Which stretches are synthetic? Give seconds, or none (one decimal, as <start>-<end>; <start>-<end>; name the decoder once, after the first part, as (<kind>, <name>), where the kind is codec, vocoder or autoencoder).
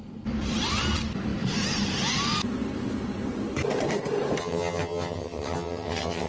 4.4-6.3 (vocoder, HiFi-GAN)